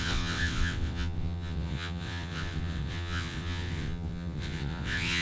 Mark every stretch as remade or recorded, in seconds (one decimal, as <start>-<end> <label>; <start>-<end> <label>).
0.0-5.2 remade